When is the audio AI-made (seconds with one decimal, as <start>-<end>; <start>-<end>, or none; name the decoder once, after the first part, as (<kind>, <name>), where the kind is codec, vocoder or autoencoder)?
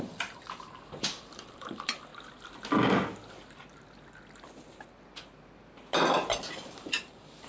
0.0-2.1 (vocoder, BigVGAN v2); 6.5-7.5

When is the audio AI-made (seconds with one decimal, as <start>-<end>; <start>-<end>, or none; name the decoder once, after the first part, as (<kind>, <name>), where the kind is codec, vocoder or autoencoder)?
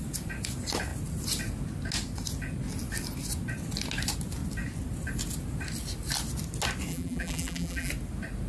6.9-7.9 (vocoder, BigVGAN v2)